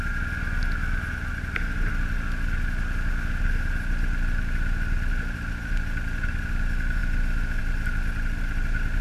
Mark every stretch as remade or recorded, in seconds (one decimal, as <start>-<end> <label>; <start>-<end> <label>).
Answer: 0.0-9.0 recorded